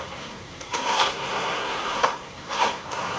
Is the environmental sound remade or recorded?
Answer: remade